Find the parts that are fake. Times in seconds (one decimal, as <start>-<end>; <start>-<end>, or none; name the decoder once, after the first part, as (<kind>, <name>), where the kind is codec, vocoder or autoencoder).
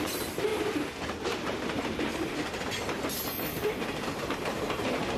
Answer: 0.0-0.5 (vocoder, BigVGAN v2); 3.5-5.2